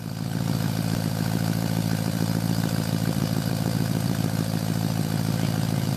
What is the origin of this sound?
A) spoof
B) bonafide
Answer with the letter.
A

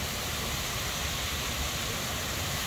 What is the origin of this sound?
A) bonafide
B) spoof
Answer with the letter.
B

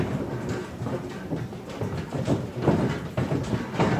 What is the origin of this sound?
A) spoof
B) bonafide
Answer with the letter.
A